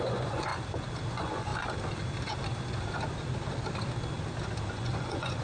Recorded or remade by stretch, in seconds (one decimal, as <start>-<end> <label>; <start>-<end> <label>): 0.0-0.5 remade; 0.5-1.1 recorded; 1.1-1.5 remade; 1.5-4.7 recorded; 4.7-5.4 remade